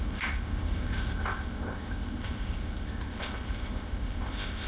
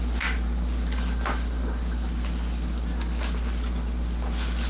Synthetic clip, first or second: first